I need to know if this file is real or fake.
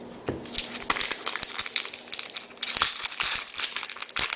real